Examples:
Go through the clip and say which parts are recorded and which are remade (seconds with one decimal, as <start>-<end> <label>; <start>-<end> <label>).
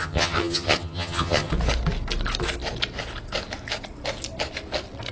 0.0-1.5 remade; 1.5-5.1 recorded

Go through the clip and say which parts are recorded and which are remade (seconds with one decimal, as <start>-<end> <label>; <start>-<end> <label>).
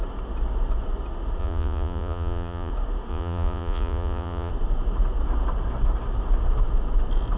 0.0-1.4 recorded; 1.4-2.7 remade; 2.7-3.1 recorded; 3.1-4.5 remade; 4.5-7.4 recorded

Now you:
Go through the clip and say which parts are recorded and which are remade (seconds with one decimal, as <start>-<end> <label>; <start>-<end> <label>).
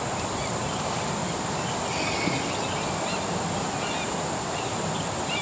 0.0-1.2 remade; 1.2-4.4 recorded; 4.4-5.4 remade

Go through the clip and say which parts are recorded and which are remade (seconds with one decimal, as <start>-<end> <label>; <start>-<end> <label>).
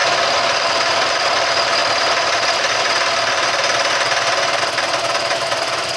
0.0-6.0 recorded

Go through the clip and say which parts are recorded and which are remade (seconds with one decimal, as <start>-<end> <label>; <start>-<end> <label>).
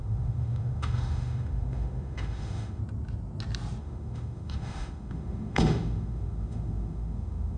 0.0-2.8 remade; 2.8-3.8 recorded; 3.8-7.6 remade